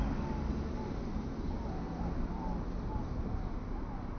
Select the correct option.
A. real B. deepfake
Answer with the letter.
A